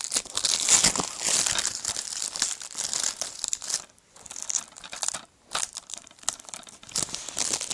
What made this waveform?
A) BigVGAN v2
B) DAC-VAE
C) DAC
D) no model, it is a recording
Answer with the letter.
D